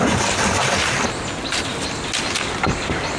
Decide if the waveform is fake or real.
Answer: real